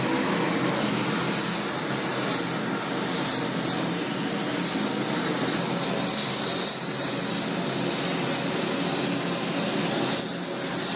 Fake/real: real